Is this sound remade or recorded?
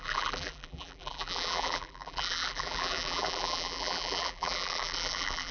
remade